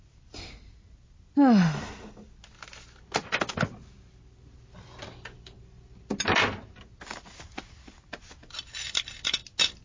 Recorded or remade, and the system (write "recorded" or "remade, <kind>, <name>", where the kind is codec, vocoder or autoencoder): recorded